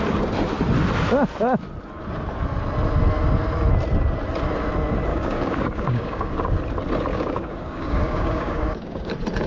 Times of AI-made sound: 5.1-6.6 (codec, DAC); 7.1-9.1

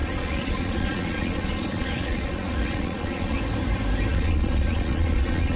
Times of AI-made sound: 0.0-3.4 (vocoder, Vocos); 4.1-5.6

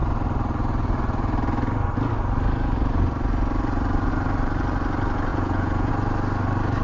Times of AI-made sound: 5.3-5.9 (vocoder, Vocos)

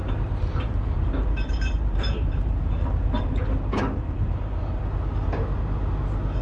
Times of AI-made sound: 0.0-3.8 (vocoder, BigVGAN v2)

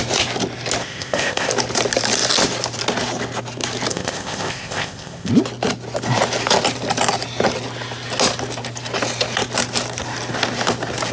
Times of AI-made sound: 0.8-1.5 (codec, ZipCodec); 3.9-5.3